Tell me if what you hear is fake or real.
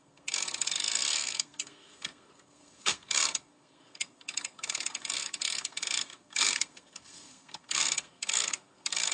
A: fake